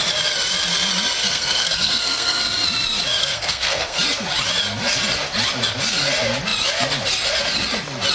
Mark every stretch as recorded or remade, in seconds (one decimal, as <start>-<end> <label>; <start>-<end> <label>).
0.0-1.2 recorded; 1.2-2.4 remade; 2.4-3.2 recorded; 3.2-4.0 remade; 4.0-8.1 recorded